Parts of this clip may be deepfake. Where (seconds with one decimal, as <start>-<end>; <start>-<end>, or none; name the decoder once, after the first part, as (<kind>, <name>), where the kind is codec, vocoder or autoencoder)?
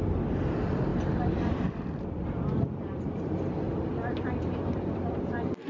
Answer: 0.0-5.7 (vocoder, BigVGAN v2)